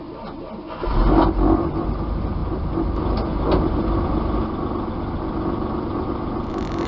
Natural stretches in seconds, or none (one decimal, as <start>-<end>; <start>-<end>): 0.0-6.9